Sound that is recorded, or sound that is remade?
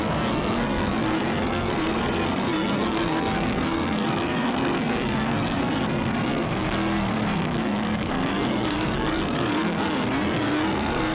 remade